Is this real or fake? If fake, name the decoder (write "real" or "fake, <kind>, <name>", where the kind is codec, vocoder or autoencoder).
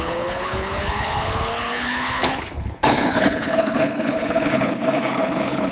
fake, codec, HILCodec